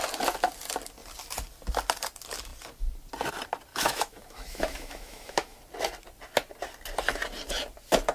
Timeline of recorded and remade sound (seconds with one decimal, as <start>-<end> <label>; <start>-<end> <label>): 0.0-3.7 recorded; 3.7-5.6 remade; 5.6-8.1 recorded